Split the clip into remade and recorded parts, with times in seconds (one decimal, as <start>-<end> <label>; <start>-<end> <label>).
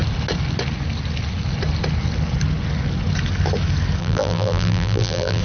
0.0-4.0 recorded; 4.0-5.4 remade